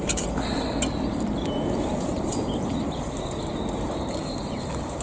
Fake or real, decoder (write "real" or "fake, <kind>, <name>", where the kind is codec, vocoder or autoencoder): real